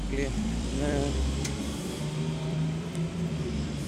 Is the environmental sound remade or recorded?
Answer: remade